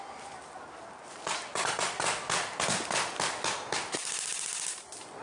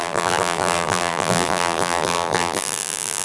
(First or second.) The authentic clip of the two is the first